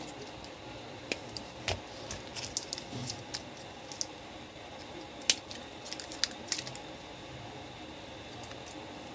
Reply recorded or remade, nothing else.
recorded